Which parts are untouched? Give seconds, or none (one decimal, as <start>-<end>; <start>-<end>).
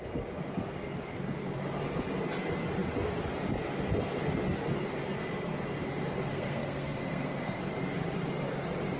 0.0-6.3; 7.6-9.0